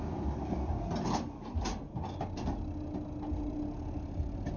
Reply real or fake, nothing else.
real